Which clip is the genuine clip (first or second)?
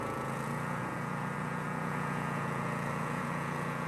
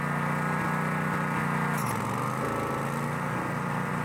second